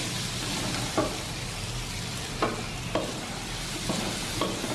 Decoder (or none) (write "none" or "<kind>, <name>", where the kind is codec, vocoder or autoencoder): none